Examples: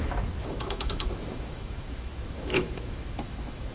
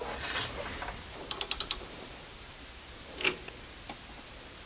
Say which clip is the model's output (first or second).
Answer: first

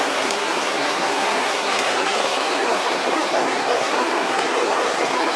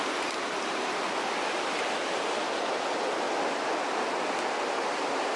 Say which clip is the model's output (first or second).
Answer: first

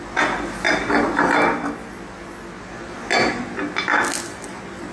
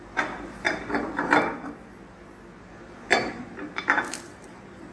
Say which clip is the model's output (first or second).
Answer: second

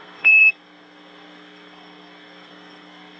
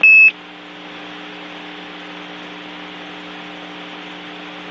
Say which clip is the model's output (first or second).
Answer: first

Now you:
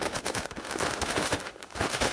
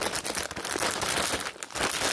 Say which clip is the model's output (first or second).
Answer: first